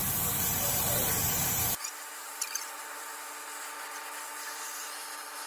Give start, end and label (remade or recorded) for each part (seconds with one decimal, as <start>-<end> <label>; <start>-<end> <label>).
0.0-3.3 remade; 3.3-5.5 recorded